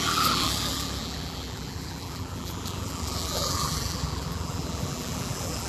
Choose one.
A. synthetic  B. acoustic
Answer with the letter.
A